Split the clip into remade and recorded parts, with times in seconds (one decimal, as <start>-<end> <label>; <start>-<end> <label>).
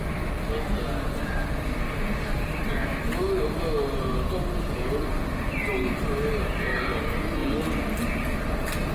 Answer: 0.0-8.9 recorded